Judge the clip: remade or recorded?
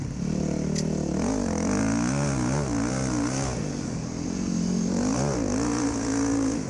recorded